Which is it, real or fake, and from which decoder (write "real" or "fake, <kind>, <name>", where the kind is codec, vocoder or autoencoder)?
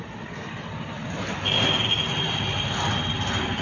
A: real